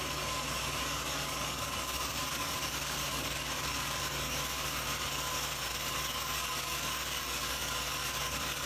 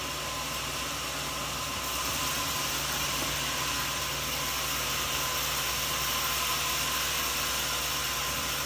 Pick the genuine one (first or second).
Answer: second